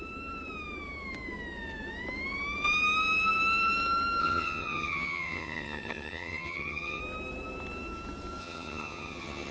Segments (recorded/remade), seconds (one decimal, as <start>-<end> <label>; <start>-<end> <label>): 0.0-4.2 recorded; 4.2-7.0 remade; 7.0-8.4 recorded; 8.4-9.5 remade